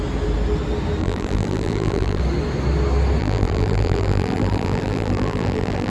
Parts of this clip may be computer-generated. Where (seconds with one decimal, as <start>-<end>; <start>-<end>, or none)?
1.0-2.2; 3.2-5.9